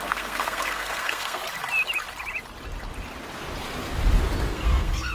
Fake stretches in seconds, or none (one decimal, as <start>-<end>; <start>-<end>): 0.0-1.4; 4.5-5.1